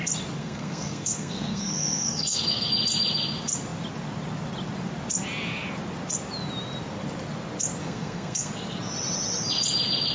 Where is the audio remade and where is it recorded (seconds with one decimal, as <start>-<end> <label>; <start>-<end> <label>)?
0.0-0.4 recorded; 0.4-2.7 remade; 2.7-7.8 recorded; 7.8-8.5 remade; 8.5-10.1 recorded